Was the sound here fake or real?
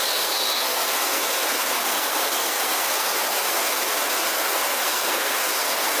fake